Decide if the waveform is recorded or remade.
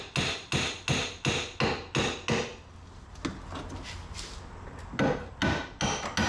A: recorded